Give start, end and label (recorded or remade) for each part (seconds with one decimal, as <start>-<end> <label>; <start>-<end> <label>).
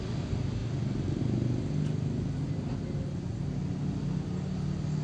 0.0-5.0 recorded